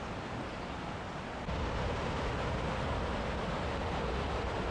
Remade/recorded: recorded